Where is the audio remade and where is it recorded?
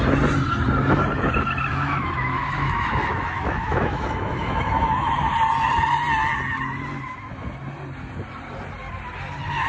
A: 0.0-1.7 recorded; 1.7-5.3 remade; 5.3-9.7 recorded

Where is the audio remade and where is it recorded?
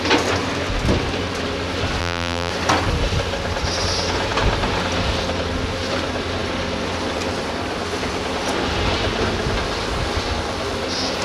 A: 0.0-2.0 recorded; 2.0-2.5 remade; 2.5-11.2 recorded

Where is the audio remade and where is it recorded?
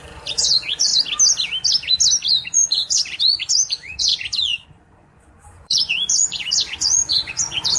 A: 0.0-0.9 remade; 0.9-2.3 recorded; 2.3-7.8 remade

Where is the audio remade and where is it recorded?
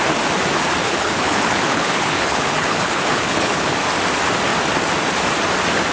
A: 0.0-0.8 recorded; 0.8-3.7 remade; 3.7-5.9 recorded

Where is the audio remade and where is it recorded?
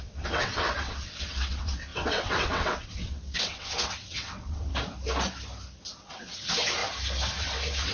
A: 0.0-4.7 remade; 4.7-6.1 recorded; 6.1-6.8 remade; 6.8-7.4 recorded; 7.4-7.9 remade